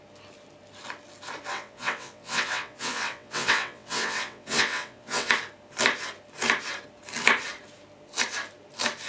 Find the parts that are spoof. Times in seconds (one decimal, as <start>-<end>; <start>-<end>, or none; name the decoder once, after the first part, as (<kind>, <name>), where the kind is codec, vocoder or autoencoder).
1.5-5.3 (vocoder, WaveNeXt)